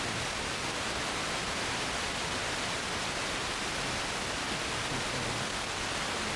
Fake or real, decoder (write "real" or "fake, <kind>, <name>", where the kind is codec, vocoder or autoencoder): real